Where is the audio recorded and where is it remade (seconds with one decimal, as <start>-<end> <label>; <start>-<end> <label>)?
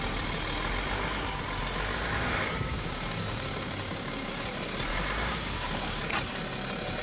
0.0-1.9 recorded; 1.9-4.3 remade; 4.3-4.9 recorded; 4.9-6.0 remade; 6.0-7.0 recorded